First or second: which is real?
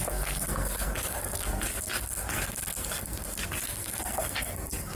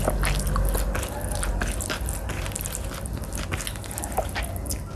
second